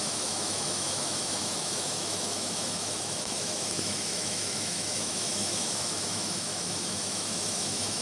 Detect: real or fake fake